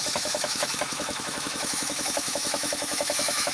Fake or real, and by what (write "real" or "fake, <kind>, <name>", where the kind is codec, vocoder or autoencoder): fake, autoencoder, DAC-VAE